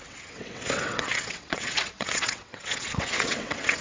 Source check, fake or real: fake